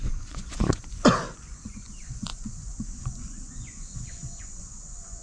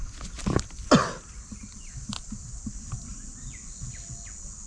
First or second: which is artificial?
first